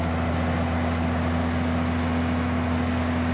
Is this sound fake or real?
real